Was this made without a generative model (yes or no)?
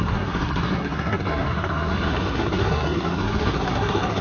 no